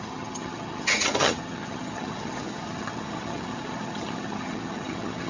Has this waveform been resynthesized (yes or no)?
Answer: yes